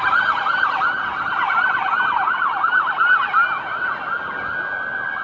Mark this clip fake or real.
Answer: real